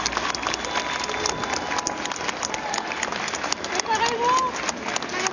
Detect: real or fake real